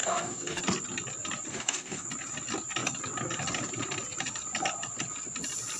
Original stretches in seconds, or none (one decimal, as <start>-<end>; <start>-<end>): 0.6-1.5; 2.1-5.8